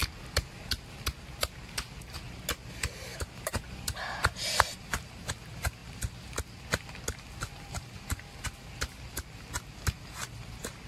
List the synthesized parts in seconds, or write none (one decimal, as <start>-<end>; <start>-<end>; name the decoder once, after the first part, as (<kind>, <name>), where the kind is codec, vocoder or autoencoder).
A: 2.7-5.8 (vocoder, BigVGAN v2); 9.8-10.9